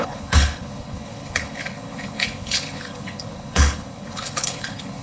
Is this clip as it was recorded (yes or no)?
no